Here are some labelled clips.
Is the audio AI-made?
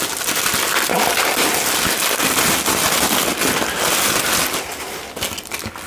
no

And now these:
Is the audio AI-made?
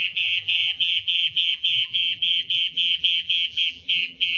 yes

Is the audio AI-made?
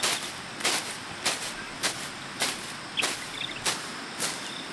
no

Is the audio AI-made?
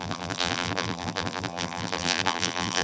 yes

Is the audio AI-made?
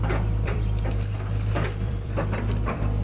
yes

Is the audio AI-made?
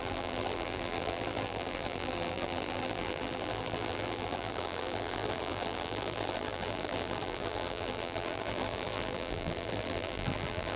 yes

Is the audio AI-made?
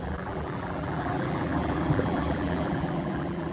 yes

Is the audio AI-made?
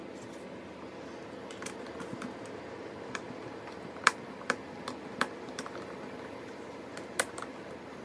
no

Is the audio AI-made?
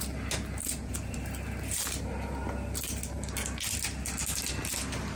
no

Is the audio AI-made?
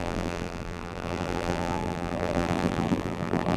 yes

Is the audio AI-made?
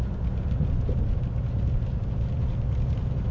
yes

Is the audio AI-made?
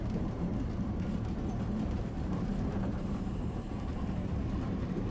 yes